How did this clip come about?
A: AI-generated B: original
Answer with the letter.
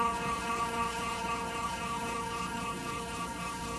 A